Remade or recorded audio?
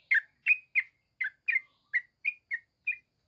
recorded